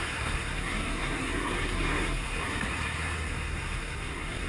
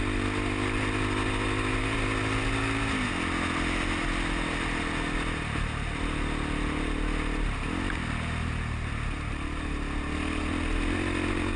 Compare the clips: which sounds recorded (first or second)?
second